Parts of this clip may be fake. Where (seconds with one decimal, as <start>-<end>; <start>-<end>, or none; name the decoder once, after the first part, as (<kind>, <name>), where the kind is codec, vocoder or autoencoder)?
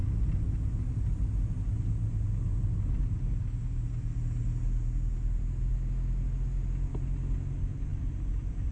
7.9-8.7 (vocoder, BigVGAN v2)